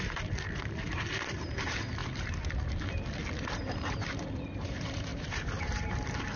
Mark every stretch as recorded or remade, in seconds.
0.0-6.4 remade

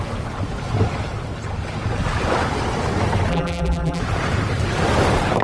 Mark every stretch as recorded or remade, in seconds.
0.0-3.3 recorded; 3.3-4.0 remade; 4.0-5.4 recorded

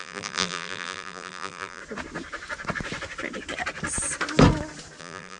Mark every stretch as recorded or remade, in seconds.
0.0-1.8 remade; 1.8-5.0 recorded; 5.0-5.4 remade

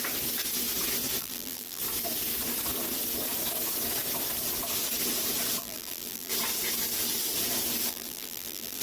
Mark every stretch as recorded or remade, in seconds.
0.0-1.2 recorded; 1.2-1.8 remade; 1.8-5.6 recorded; 5.6-6.3 remade; 6.3-7.9 recorded; 7.9-8.8 remade

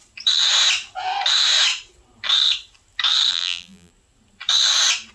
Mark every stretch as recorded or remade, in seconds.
0.0-3.3 recorded; 3.3-3.9 remade; 3.9-5.1 recorded

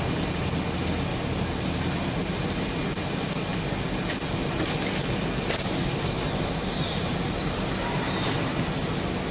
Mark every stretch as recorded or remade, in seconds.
0.0-1.1 recorded; 1.1-2.8 remade; 2.8-6.6 recorded; 6.6-7.8 remade; 7.8-9.3 recorded